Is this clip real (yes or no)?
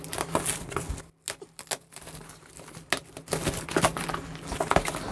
yes